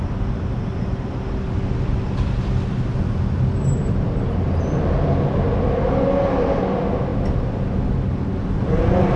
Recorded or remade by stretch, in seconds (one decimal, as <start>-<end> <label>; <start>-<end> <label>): 0.0-9.2 recorded